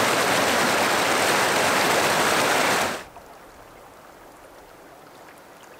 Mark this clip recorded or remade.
recorded